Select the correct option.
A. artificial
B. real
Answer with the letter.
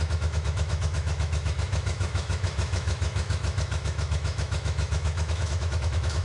A